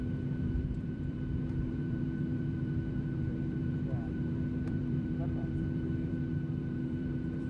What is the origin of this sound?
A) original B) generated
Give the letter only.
B